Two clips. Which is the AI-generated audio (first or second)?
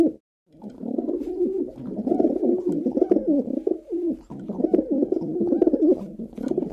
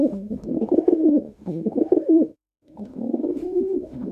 second